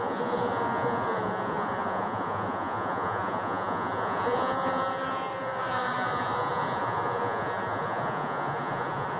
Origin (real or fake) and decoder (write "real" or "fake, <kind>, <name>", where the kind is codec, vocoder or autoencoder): fake, vocoder, Vocos